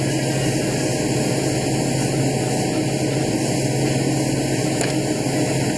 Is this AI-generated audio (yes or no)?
no